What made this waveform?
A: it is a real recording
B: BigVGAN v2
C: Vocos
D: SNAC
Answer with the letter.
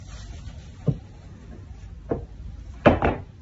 A